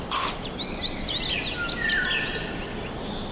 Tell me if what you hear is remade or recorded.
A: recorded